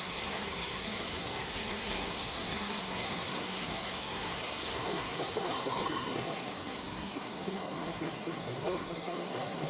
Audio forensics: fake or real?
fake